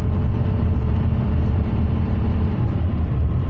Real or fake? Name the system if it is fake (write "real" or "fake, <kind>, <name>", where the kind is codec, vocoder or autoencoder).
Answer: fake, vocoder, BigVGAN v2